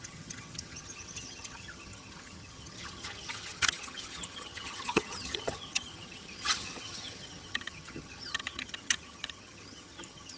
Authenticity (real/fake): fake